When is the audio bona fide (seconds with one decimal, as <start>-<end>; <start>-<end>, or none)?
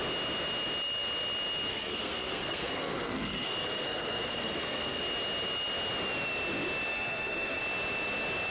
0.0-1.7; 5.0-6.9; 7.6-8.5